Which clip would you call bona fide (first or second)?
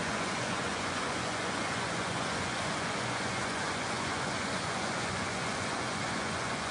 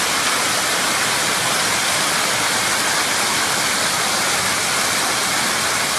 second